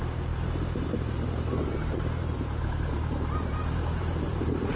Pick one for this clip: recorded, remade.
remade